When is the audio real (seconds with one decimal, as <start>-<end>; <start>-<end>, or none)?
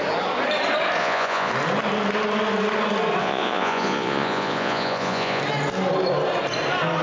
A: 0.0-1.0; 1.5-3.2; 5.4-7.0